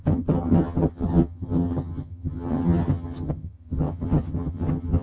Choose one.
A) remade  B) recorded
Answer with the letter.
A